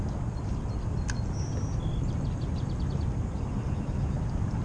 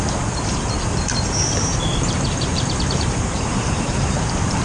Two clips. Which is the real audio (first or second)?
first